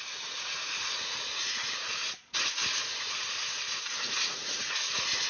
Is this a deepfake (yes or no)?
yes